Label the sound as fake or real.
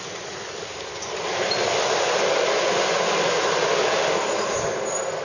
real